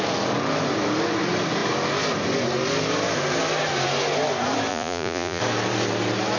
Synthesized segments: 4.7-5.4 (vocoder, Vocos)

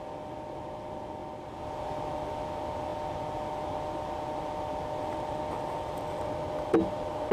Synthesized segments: none

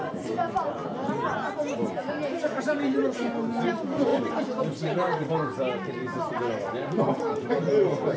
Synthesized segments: 4.1-5.3 (vocoder, BigVGAN v2)

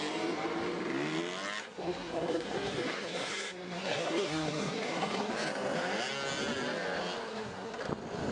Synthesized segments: 1.6-5.3 (codec, SNAC); 7.3-7.8

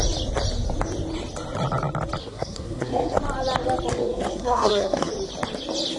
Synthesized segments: 2.2-3.2 (codec, SNAC); 3.9-5.1